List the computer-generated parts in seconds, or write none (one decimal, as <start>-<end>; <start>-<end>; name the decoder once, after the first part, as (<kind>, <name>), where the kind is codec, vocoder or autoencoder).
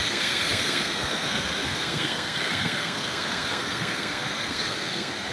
0.0-5.3 (codec, SNAC)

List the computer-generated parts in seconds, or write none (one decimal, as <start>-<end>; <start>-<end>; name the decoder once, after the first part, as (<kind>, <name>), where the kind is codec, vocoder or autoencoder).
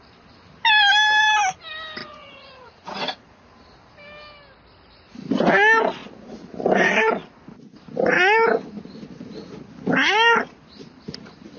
2.0-3.5 (vocoder, Vocos)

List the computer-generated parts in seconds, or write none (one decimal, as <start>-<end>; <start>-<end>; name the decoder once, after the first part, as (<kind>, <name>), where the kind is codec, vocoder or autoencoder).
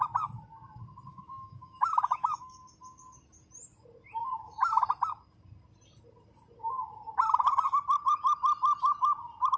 1.1-2.6 (autoencoder, DAC-VAE); 4.2-4.8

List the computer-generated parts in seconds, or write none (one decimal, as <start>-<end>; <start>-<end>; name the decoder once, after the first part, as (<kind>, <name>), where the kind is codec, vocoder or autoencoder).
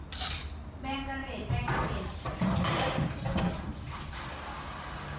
1.2-4.1 (vocoder, BigVGAN v2)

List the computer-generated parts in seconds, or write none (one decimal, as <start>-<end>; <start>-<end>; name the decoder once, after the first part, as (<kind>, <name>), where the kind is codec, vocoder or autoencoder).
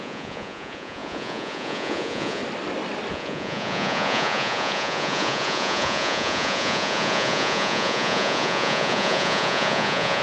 0.0-2.4 (vocoder, Vocos); 3.1-10.2